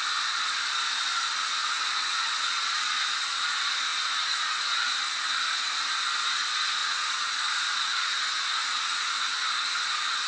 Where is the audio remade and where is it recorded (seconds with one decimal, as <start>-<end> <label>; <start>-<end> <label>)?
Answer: 0.0-1.6 recorded; 1.6-2.7 remade; 2.7-3.9 recorded; 3.9-4.9 remade; 4.9-6.8 recorded; 6.8-9.1 remade; 9.1-10.3 recorded

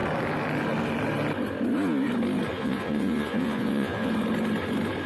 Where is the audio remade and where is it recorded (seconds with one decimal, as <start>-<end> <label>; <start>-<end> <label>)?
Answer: 0.0-2.5 recorded; 2.5-4.1 remade; 4.1-5.1 recorded

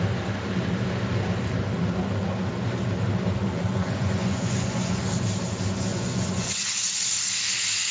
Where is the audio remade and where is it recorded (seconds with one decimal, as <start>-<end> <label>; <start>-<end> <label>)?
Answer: 0.0-3.7 recorded; 3.7-5.0 remade; 5.0-5.9 recorded; 5.9-6.5 remade; 6.5-7.9 recorded

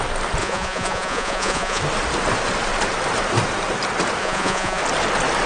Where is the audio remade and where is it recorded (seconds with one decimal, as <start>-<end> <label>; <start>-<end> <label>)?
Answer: 0.0-0.4 recorded; 0.4-1.8 remade; 1.8-4.2 recorded; 4.2-4.8 remade; 4.8-5.5 recorded

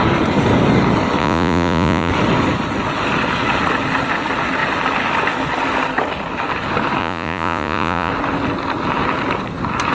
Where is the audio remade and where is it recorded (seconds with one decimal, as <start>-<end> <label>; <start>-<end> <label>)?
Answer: 0.0-1.2 recorded; 1.2-2.1 remade; 2.1-7.0 recorded; 7.0-8.1 remade; 8.1-9.9 recorded